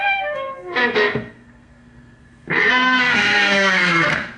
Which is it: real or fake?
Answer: fake